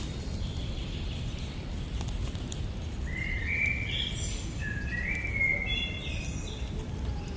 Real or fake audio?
real